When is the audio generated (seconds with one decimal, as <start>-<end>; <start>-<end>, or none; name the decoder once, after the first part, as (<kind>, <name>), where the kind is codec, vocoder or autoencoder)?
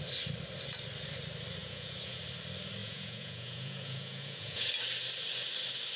1.6-2.2 (vocoder, Vocos); 2.8-4.7